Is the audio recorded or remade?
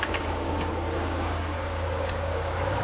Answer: remade